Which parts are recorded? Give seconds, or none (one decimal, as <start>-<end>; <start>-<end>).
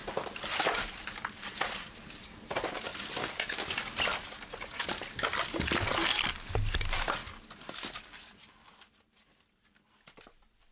0.9-5.3; 5.9-10.7